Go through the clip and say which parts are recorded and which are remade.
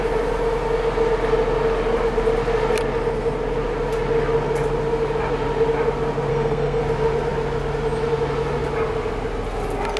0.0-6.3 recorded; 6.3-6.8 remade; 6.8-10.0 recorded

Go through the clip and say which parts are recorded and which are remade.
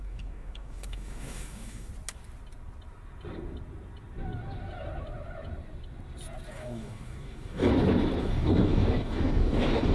0.0-1.9 remade; 1.9-6.5 recorded; 6.5-7.7 remade; 7.7-8.2 recorded; 8.2-9.9 remade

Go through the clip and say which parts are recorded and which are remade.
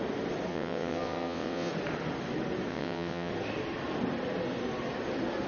0.0-0.5 recorded; 0.5-1.7 remade; 1.7-2.7 recorded; 2.7-3.3 remade; 3.3-5.5 recorded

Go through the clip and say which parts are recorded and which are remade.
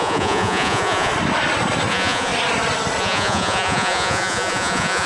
0.0-1.1 remade; 1.1-1.9 recorded; 1.9-2.3 remade; 2.3-3.0 recorded; 3.0-5.1 remade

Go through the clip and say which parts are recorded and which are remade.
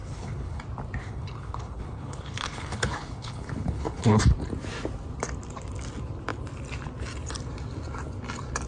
0.0-0.6 remade; 0.6-1.0 recorded; 1.0-4.2 remade; 4.2-8.7 recorded